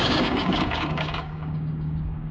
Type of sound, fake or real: fake